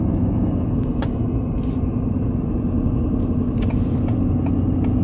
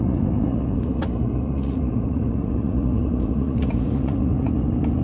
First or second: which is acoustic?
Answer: first